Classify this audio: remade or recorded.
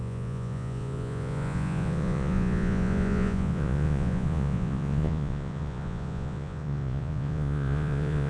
remade